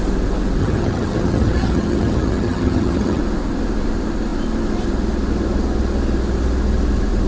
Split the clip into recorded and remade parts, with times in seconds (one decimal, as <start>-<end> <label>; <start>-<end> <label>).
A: 0.0-0.6 recorded; 0.6-3.2 remade; 3.2-7.3 recorded